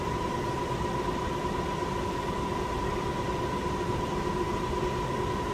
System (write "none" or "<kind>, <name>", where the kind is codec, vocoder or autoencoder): none